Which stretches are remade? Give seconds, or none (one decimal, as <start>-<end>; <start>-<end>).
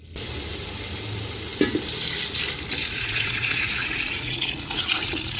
2.8-5.4